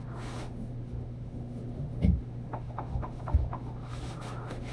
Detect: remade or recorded remade